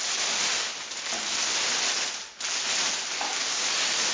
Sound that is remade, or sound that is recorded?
recorded